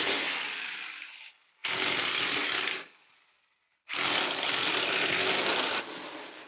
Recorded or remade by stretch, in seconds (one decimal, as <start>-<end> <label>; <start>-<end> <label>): 0.0-6.5 recorded